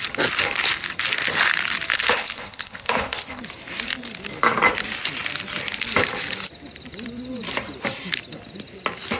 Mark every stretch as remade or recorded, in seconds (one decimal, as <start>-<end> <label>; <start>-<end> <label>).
0.0-1.9 recorded; 1.9-3.4 remade; 3.4-9.2 recorded